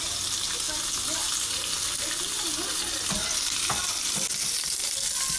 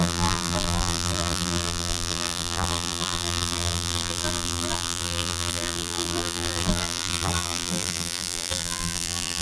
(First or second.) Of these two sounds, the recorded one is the first